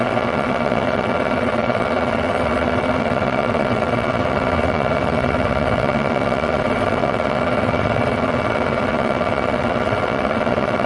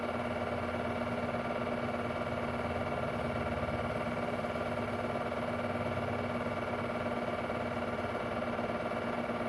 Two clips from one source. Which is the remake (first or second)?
first